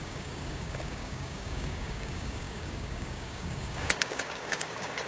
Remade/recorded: remade